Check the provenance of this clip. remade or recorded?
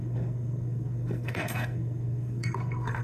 remade